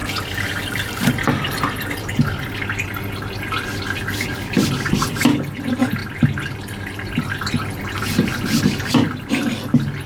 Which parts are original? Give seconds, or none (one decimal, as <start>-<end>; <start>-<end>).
0.0-10.1